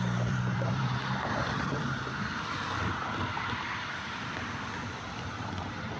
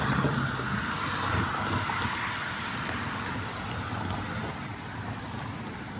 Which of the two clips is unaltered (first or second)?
second